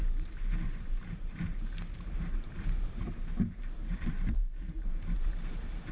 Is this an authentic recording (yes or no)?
no